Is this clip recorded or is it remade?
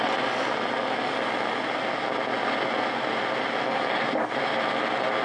recorded